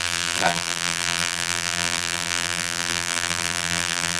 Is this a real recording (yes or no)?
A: no